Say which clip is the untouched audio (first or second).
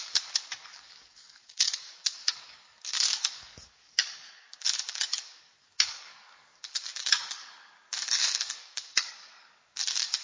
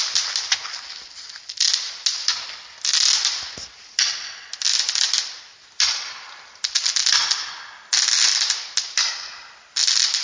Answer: second